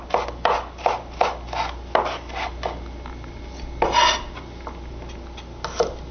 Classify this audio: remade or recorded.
recorded